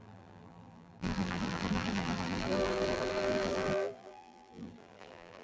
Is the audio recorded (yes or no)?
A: no